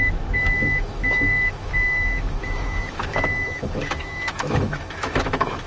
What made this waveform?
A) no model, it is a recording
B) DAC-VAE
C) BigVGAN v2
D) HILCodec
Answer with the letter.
B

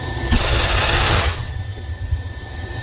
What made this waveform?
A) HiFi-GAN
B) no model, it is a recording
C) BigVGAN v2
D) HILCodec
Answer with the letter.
A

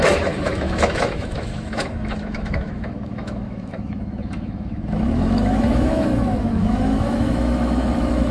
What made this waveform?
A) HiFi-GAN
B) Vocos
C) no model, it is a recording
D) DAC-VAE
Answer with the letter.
D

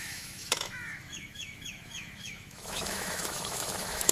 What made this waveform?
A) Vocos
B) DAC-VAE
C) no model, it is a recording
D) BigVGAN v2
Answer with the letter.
B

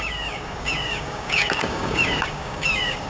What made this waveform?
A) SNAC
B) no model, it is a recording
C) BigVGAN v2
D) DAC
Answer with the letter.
D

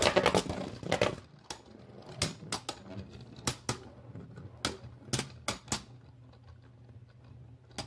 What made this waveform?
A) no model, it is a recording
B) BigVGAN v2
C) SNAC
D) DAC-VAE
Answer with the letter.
A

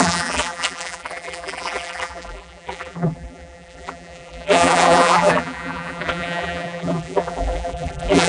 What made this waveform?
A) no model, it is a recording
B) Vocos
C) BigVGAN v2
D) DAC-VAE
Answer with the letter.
C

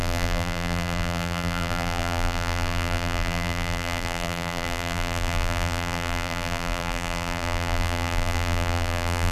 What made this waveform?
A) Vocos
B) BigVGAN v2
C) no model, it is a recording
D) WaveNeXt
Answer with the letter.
B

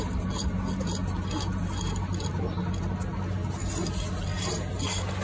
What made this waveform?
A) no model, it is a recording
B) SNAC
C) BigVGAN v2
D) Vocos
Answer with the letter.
A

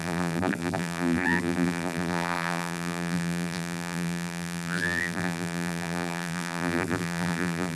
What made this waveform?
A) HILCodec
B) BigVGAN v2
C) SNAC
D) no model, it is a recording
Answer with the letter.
B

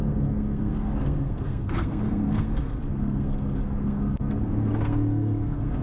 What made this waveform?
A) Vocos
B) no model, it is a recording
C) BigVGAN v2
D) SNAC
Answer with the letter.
D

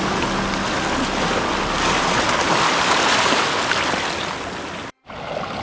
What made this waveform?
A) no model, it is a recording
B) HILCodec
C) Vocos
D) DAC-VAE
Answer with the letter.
A